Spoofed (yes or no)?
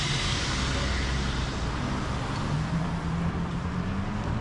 no